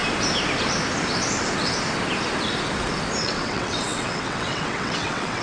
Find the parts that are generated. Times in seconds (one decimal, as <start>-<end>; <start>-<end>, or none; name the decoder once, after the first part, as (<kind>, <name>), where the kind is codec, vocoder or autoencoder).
3.2-5.4 (vocoder, WaveNeXt)